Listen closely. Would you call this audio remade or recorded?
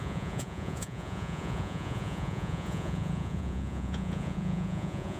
remade